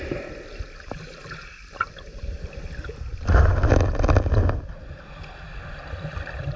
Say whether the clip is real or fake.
real